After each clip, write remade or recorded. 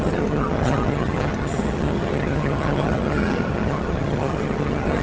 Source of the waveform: remade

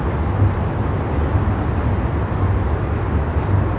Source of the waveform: recorded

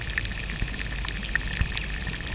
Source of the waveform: recorded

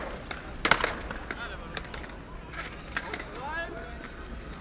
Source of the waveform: recorded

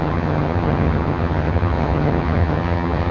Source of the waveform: remade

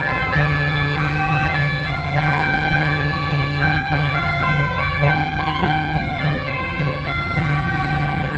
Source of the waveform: remade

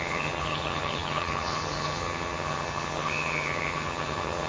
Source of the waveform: remade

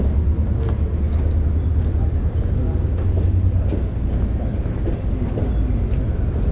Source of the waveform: recorded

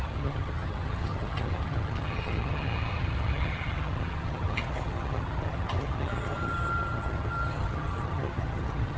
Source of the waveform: remade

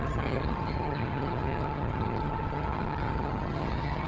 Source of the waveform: remade